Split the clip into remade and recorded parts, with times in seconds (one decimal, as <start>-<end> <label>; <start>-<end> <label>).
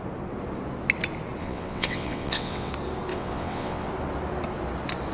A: 0.0-1.4 recorded; 1.4-2.7 remade; 2.7-3.1 recorded; 3.1-3.9 remade; 3.9-5.1 recorded